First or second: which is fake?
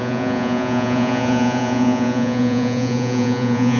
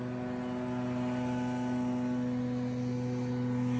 first